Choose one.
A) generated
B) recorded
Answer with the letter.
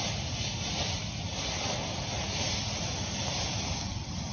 B